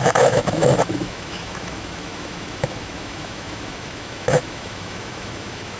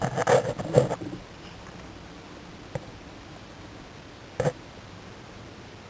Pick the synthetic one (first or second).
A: first